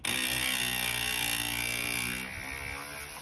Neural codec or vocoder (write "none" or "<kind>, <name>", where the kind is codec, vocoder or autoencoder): none